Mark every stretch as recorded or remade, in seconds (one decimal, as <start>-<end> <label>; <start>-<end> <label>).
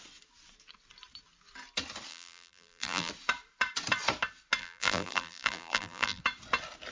0.0-2.1 recorded; 2.1-3.1 remade; 3.1-4.6 recorded; 4.6-6.2 remade; 6.2-6.9 recorded